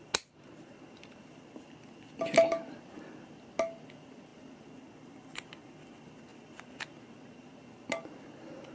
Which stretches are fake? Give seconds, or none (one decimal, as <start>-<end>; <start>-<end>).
none